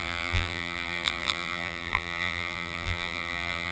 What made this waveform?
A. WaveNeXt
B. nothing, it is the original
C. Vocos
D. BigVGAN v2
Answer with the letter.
D